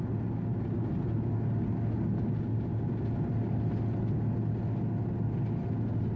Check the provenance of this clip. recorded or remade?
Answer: recorded